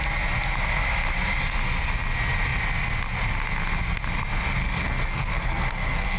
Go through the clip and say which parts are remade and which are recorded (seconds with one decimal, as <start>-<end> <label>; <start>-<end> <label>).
0.0-4.6 recorded; 4.6-6.2 remade